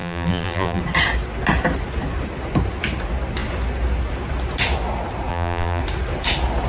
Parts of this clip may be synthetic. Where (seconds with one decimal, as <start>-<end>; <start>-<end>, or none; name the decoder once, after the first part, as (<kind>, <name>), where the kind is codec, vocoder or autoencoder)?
0.0-0.8 (vocoder, BigVGAN v2); 5.3-5.8